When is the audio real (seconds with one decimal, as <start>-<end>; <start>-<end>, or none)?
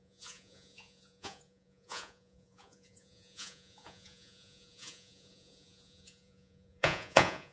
none